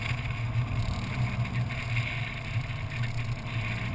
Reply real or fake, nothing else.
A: real